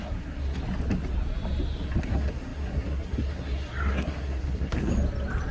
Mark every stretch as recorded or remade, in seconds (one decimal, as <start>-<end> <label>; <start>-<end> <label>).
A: 0.0-0.6 remade; 0.6-2.0 recorded; 2.0-4.9 remade; 4.9-5.5 recorded